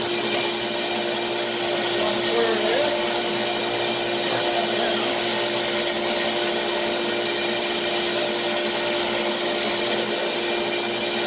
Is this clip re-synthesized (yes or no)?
no